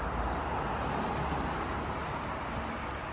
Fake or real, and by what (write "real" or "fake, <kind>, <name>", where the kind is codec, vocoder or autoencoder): real